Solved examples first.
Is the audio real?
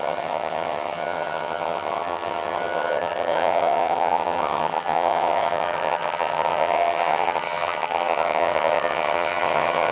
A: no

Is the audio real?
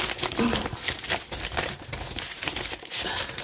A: yes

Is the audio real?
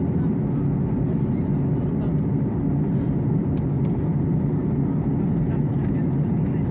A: yes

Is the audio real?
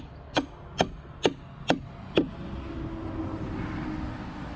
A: yes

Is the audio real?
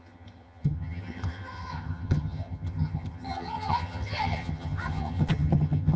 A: no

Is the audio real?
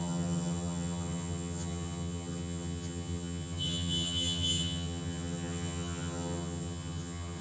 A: no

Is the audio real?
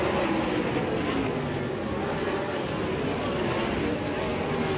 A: yes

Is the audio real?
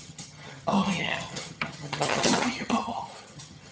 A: no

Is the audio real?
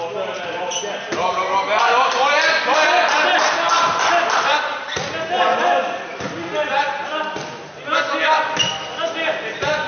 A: yes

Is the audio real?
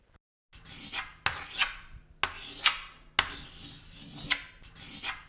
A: yes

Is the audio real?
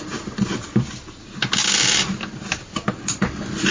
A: yes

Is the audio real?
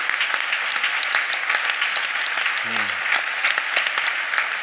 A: yes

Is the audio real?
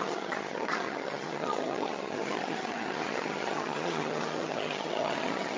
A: no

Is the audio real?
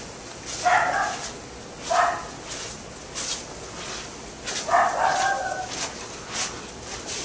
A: yes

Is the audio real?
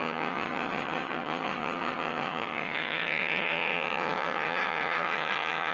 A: no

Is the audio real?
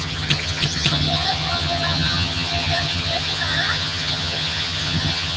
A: no